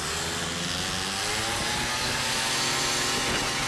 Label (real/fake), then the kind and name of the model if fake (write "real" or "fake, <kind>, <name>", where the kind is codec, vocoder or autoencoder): real